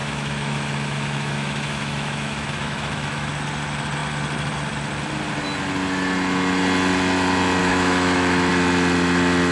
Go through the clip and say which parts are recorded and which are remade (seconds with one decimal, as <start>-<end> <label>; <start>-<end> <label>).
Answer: 0.0-3.3 remade; 3.3-7.6 recorded; 7.6-8.5 remade; 8.5-9.5 recorded